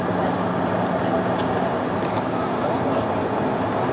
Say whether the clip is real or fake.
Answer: real